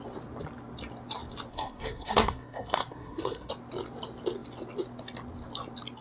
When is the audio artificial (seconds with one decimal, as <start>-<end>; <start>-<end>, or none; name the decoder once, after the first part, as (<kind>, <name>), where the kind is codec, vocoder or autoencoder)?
1.5-3.5 (codec, SNAC)